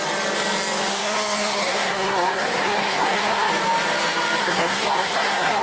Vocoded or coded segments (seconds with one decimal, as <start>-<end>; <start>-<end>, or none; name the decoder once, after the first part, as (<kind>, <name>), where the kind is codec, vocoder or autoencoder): 0.9-3.5 (codec, SNAC); 4.4-5.6

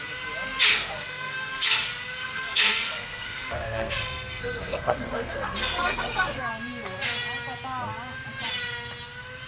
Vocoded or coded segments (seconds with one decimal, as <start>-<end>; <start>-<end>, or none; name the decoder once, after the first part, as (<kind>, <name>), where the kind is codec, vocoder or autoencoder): 0.7-1.8 (codec, SNAC); 2.2-6.5

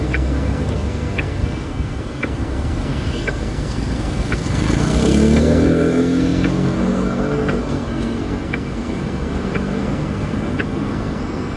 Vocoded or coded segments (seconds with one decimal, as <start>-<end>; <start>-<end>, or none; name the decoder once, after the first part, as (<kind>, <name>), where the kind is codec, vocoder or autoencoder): 0.0-11.6 (codec, SNAC)

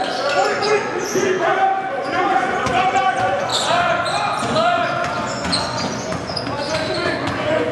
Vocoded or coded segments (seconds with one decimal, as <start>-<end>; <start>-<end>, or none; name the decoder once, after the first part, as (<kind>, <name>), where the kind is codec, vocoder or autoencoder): 0.0-1.5 (vocoder, Vocos); 2.0-7.7

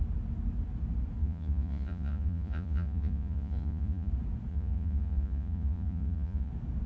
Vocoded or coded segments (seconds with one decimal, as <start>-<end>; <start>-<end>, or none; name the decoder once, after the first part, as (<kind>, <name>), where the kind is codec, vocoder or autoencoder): 1.2-4.1 (vocoder, Vocos); 4.5-6.5

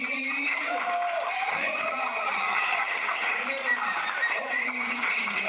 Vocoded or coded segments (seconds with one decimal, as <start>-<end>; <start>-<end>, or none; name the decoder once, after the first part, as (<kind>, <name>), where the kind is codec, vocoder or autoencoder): 0.0-0.7 (vocoder, HiFi-GAN); 1.3-3.4; 4.3-5.5